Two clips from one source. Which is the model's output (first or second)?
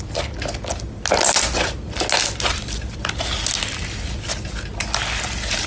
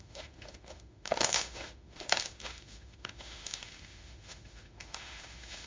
second